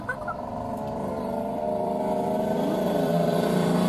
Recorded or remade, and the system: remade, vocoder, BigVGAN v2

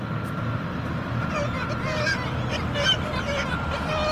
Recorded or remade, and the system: recorded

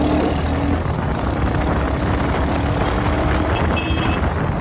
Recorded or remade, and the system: recorded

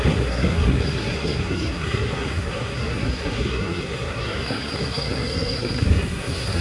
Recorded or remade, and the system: remade, codec, SNAC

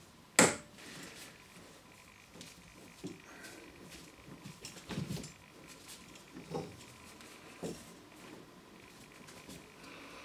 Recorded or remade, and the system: recorded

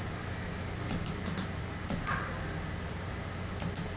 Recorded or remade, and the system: recorded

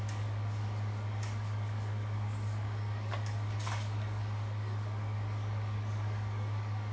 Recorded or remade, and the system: remade, codec, DAC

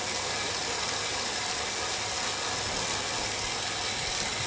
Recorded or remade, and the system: recorded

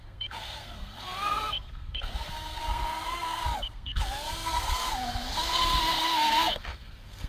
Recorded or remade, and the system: remade, codec, SNAC